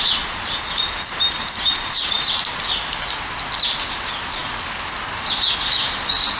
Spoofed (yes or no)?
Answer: no